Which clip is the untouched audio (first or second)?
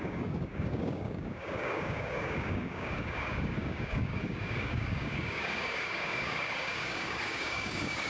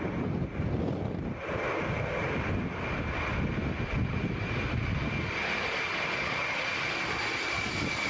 second